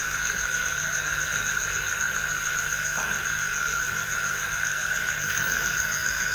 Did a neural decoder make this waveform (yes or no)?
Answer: yes